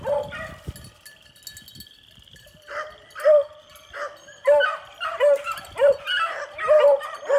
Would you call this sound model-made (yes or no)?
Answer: no